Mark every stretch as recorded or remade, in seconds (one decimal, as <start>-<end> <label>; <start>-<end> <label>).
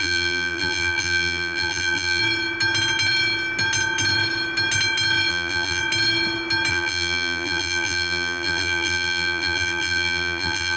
0.0-2.2 remade; 2.2-5.3 recorded; 5.3-5.8 remade; 5.8-6.7 recorded; 6.7-10.8 remade